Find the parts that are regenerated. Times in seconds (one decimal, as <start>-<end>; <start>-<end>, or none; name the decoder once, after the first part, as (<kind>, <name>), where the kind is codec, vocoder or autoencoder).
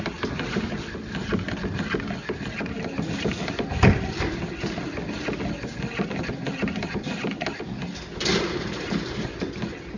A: 8.3-9.3 (vocoder, BigVGAN v2)